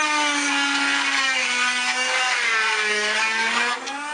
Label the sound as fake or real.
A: fake